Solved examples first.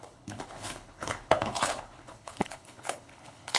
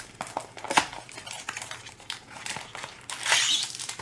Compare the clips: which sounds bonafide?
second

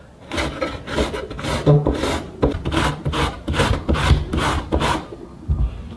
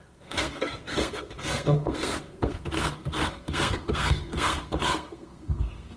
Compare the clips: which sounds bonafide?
first